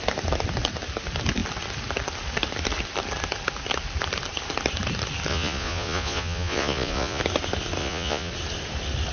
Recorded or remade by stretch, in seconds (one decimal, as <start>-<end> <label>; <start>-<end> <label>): 0.0-5.3 recorded; 5.3-7.2 remade; 7.2-7.8 recorded; 7.8-8.3 remade; 8.3-9.1 recorded